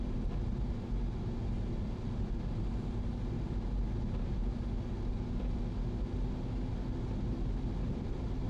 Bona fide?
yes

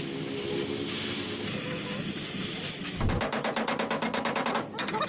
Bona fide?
yes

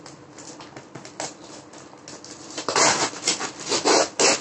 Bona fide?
yes